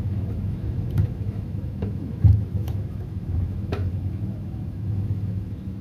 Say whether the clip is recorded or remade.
remade